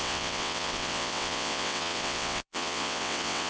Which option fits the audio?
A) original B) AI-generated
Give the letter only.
B